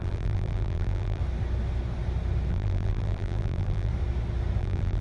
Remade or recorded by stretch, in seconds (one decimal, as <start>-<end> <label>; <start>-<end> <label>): 0.0-1.2 remade; 1.2-2.5 recorded; 2.5-3.9 remade; 3.9-4.6 recorded; 4.6-5.0 remade

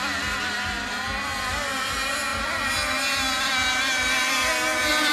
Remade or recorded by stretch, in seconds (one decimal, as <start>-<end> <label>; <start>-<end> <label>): 0.0-5.1 recorded

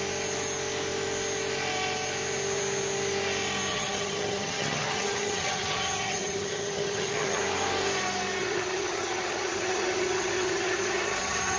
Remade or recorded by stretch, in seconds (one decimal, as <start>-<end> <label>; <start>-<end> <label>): 0.0-3.7 recorded; 3.7-7.4 remade; 7.4-8.4 recorded; 8.4-11.6 remade

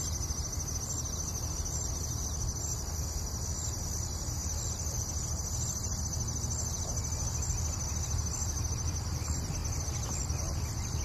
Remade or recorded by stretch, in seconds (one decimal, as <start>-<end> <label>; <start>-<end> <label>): 0.0-9.6 recorded; 9.6-10.2 remade; 10.2-11.0 recorded

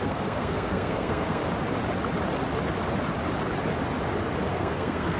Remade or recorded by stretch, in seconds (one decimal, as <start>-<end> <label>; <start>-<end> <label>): 0.0-1.4 remade; 1.4-4.5 recorded; 4.5-5.2 remade

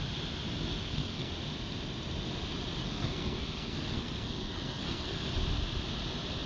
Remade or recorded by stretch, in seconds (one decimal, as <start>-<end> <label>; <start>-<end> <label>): 0.0-0.8 recorded; 0.8-1.3 remade; 1.3-2.8 recorded; 2.8-5.3 remade; 5.3-6.5 recorded

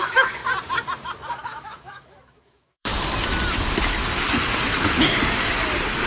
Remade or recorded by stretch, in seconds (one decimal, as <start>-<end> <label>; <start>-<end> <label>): 0.0-0.4 remade; 0.4-1.3 recorded; 1.3-2.9 remade; 2.9-6.1 recorded